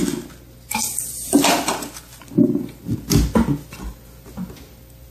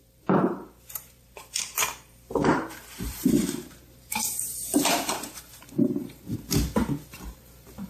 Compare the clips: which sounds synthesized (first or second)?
second